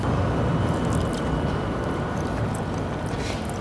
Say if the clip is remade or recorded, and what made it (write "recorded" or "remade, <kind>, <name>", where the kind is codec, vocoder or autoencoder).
recorded